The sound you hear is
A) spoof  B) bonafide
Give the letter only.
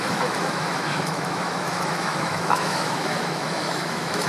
A